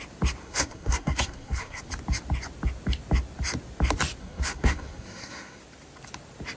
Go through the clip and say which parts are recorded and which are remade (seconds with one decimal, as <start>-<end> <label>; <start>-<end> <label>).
0.0-0.4 recorded; 0.4-1.8 remade; 1.8-4.2 recorded; 4.2-5.6 remade; 5.6-6.6 recorded